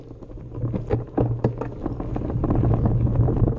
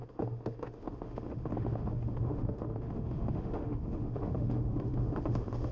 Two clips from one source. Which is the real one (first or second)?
first